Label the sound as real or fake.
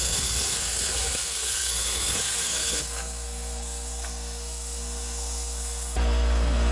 fake